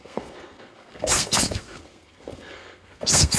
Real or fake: fake